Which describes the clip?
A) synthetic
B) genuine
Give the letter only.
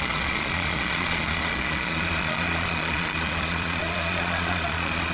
A